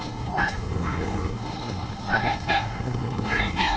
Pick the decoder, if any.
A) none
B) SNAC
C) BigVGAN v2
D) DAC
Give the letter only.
B